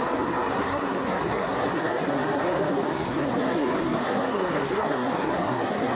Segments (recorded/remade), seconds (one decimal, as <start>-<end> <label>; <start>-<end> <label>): 0.0-6.0 remade